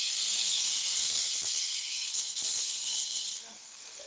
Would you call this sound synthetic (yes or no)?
yes